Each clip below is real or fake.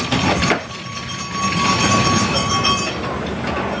real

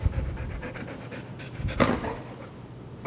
real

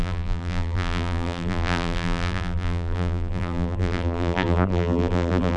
fake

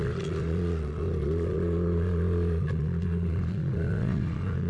fake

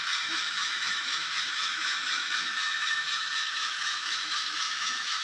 fake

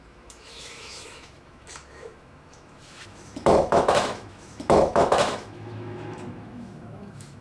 fake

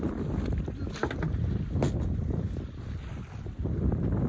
real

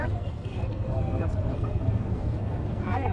fake